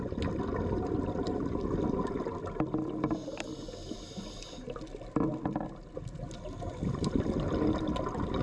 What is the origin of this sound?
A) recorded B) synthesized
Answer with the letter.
A